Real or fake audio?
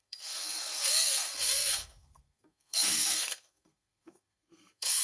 fake